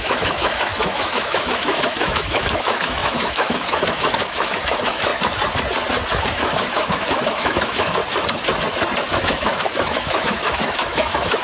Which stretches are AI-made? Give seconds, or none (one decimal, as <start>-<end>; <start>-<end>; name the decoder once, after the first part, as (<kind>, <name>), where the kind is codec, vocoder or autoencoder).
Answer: 0.0-5.1 (autoencoder, DAC-VAE); 6.3-8.0; 9.1-11.4